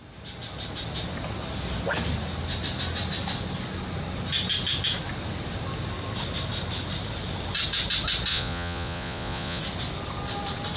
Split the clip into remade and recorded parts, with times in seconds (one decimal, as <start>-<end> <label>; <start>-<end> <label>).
0.0-8.3 recorded; 8.3-9.6 remade; 9.6-10.8 recorded